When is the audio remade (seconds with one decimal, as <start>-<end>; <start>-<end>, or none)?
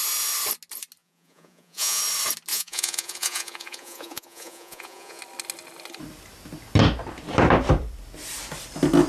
1.0-2.0; 2.5-5.2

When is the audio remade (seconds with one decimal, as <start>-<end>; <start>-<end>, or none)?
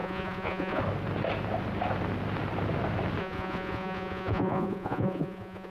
0.0-0.8; 3.2-5.7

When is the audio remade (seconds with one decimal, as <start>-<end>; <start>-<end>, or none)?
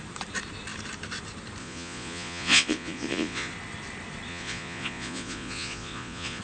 1.6-3.5; 4.3-6.4